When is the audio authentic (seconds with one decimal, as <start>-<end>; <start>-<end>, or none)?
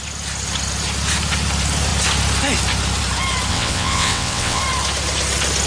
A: 0.0-3.5; 4.6-5.7